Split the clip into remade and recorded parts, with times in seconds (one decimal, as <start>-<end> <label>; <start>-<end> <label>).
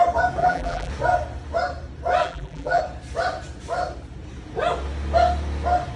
0.0-0.4 recorded; 0.4-0.9 remade; 0.9-2.2 recorded; 2.2-2.8 remade; 2.8-6.0 recorded